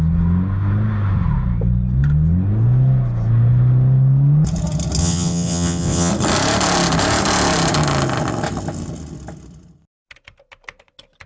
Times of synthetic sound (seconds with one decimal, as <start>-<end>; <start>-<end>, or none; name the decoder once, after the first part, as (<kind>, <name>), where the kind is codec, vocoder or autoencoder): 5.0-6.1 (vocoder, WaveNeXt)